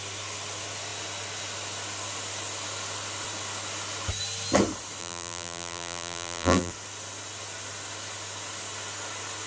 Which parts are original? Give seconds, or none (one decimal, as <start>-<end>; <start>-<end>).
0.0-5.0; 6.7-9.5